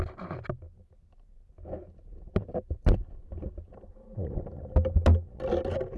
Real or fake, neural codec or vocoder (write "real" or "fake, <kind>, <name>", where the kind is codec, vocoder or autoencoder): real